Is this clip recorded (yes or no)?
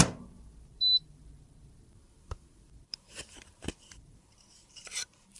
no